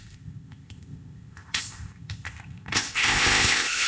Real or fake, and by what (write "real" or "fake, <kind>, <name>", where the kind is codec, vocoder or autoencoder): fake, codec, ZipCodec